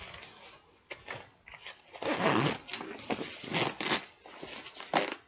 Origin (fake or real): real